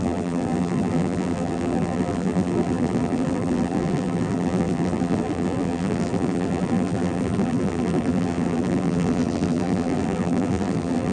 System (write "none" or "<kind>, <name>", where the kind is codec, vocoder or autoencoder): vocoder, BigVGAN v2